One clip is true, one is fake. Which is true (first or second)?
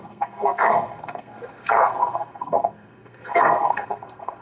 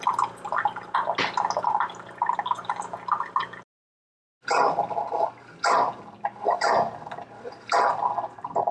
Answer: second